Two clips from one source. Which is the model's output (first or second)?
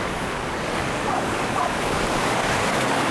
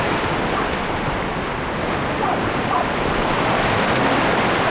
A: first